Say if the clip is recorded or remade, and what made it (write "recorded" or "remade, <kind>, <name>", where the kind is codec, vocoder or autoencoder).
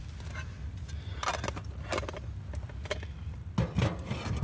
recorded